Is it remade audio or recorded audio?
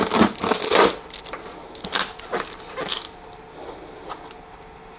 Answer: recorded